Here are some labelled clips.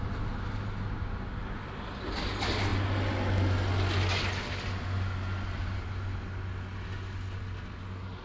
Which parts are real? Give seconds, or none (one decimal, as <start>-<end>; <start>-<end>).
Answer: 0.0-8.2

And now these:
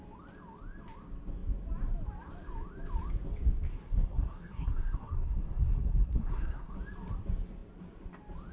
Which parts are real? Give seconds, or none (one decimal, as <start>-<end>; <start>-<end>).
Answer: 0.0-3.7; 6.7-8.5

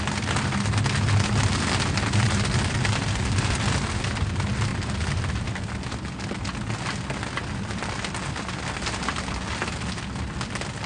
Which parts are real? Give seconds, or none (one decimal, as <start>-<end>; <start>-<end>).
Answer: 0.0-10.9